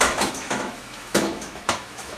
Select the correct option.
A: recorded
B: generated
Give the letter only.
B